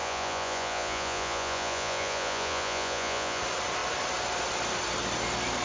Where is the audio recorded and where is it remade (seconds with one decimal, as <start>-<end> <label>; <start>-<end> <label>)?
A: 0.0-3.4 remade; 3.4-5.6 recorded